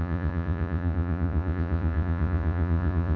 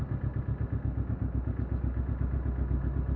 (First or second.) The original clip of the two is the second